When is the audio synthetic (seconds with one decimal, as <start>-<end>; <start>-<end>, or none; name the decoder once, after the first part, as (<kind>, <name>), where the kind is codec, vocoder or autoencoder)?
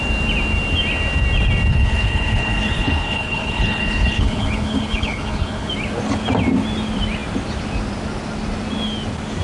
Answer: 1.7-5.7 (codec, HILCodec)